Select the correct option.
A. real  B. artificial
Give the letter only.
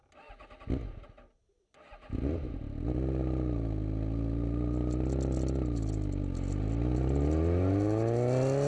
A